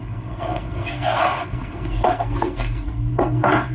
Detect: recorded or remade remade